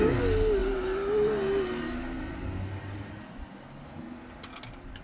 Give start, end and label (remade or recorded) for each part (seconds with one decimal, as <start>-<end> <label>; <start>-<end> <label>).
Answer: 0.0-5.0 recorded